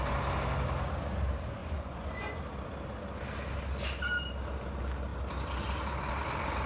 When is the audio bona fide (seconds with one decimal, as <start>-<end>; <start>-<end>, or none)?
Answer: 0.0-1.6; 2.4-6.7